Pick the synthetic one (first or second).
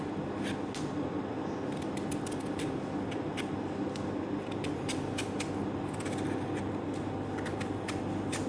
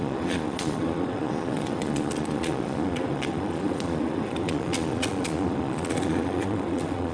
second